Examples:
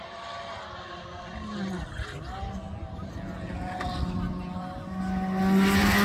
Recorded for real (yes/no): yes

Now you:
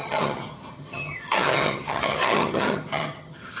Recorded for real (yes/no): no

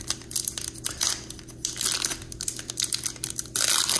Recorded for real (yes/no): yes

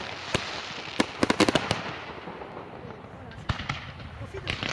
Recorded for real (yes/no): yes